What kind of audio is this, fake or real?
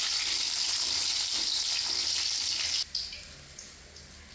real